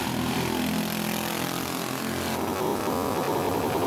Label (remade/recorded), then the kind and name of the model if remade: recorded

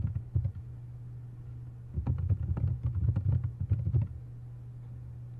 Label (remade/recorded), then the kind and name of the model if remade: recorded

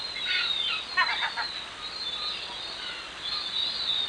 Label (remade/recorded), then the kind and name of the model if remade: recorded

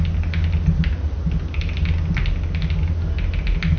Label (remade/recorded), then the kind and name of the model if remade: recorded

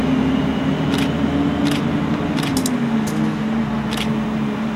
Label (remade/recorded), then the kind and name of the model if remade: recorded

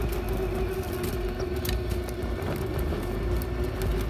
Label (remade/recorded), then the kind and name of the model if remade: recorded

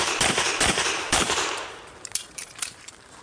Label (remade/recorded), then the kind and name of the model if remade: remade, vocoder, BigVGAN v2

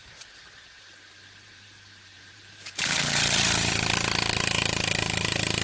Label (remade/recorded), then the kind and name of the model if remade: remade, vocoder, BigVGAN v2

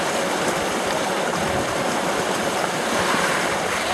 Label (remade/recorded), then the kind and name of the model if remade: remade, vocoder, BigVGAN v2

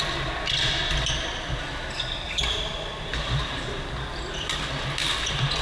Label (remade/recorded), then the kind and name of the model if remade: recorded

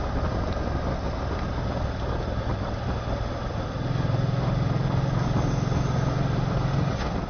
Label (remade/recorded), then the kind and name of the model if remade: recorded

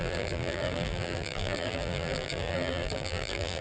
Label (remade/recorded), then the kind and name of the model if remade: remade, vocoder, BigVGAN v2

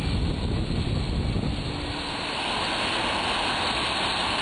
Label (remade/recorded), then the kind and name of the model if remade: recorded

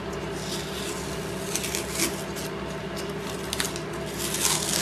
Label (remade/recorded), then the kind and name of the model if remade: recorded